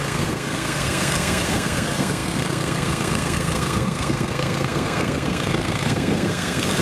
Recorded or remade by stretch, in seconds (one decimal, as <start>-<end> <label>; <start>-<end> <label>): 0.0-6.8 remade